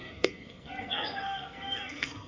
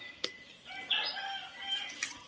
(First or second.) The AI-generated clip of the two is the first